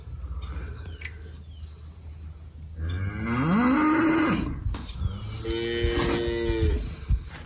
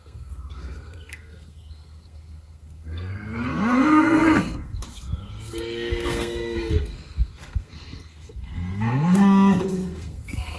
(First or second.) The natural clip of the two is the first